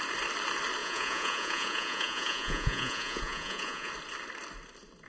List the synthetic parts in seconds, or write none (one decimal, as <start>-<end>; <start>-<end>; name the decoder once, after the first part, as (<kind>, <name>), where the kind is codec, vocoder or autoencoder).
0.8-3.9 (vocoder, Vocos)